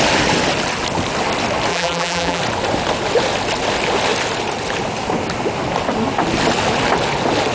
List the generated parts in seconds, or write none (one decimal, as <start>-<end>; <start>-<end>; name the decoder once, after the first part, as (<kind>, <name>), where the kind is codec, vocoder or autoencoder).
1.7-2.4 (vocoder, BigVGAN v2)